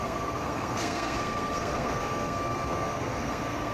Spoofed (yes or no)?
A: yes